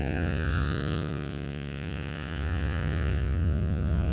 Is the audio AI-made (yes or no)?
yes